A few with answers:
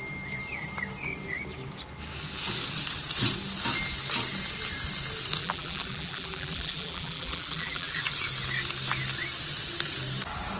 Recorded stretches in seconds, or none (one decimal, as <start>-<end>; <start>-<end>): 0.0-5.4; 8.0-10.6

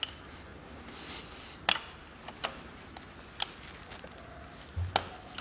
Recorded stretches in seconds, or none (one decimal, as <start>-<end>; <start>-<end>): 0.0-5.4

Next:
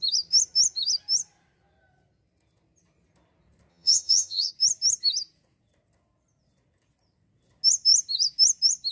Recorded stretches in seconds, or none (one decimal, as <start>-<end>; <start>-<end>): 0.0-3.7; 4.5-8.9

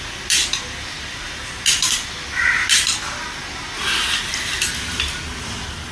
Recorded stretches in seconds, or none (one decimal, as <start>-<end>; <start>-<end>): 0.0-5.9

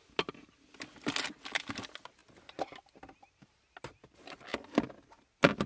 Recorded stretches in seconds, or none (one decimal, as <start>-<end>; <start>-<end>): 0.0-5.7

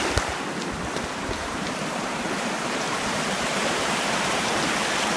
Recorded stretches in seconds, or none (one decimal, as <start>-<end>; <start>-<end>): 0.0-1.4; 4.5-5.2

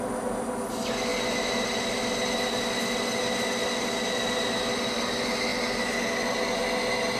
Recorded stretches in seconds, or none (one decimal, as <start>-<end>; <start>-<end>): 0.0-7.2

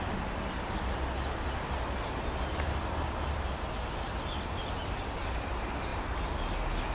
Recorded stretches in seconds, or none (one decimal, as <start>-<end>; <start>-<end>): 0.0-6.9